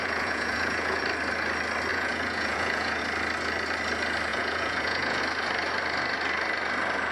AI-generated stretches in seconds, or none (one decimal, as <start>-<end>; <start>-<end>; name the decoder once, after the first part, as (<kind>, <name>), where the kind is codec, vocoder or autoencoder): 0.0-1.0 (vocoder, Vocos); 1.9-3.0; 4.3-5.2

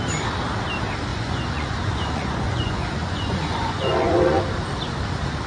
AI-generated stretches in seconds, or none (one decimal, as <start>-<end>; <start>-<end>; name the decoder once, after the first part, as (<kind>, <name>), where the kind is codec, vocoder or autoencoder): 1.1-4.4 (vocoder, Vocos)

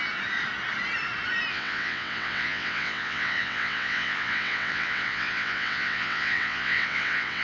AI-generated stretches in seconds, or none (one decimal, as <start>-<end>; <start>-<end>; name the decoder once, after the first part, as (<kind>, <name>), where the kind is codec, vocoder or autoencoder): 1.5-7.4 (vocoder, WaveNeXt)

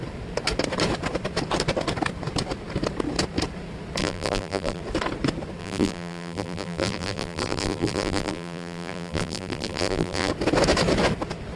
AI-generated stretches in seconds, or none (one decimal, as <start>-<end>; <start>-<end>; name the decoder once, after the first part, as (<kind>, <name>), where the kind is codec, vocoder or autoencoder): 4.0-4.8 (vocoder, BigVGAN v2); 5.6-10.3

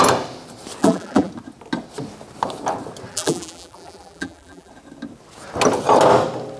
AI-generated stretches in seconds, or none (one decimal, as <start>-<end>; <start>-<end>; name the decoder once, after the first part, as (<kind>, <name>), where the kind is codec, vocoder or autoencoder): 0.8-1.3 (vocoder, BigVGAN v2); 3.1-4.7

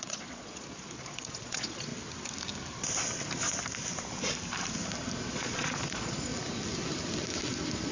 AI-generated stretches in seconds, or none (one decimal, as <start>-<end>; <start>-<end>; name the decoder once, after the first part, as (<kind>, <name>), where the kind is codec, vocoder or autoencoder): 0.0-1.9 (vocoder, Vocos); 5.3-6.3